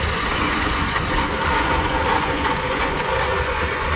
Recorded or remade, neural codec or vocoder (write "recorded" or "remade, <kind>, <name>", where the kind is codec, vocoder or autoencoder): remade, vocoder, Vocos